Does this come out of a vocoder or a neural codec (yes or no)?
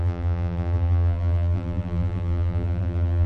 yes